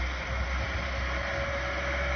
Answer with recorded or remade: recorded